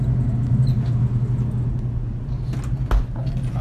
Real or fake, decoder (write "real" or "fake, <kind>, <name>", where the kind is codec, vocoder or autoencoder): real